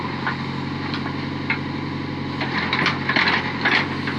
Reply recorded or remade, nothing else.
recorded